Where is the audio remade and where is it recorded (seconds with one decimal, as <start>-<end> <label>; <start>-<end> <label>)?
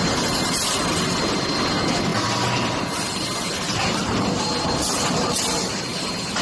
0.0-6.4 recorded